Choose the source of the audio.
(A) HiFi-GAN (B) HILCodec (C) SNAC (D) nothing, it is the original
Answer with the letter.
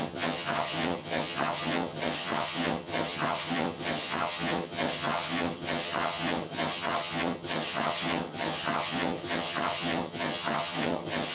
A